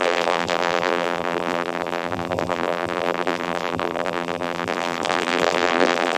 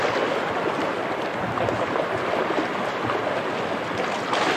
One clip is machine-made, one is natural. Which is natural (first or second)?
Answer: second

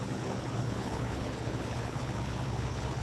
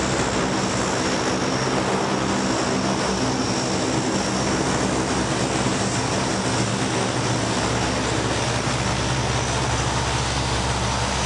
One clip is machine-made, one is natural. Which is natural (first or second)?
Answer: second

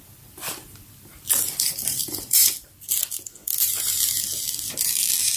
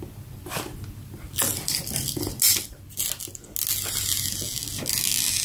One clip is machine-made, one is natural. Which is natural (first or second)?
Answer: second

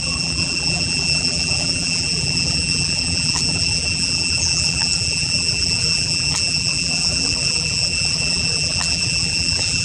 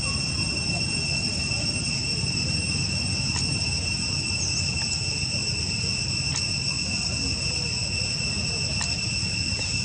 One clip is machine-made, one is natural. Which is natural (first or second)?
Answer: second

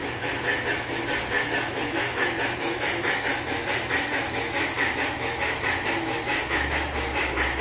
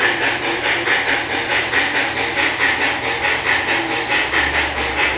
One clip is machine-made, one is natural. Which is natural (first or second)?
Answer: second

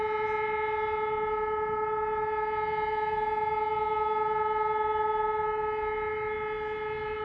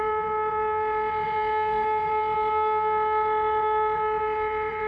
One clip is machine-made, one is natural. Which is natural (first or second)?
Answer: first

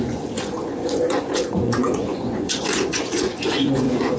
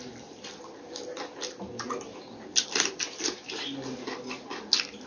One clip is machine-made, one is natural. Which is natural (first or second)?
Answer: second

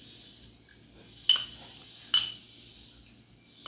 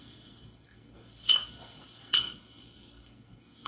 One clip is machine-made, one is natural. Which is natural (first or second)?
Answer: first